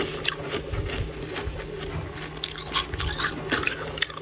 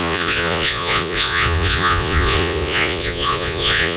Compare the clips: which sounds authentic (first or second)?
first